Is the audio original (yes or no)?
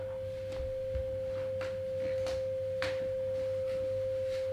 yes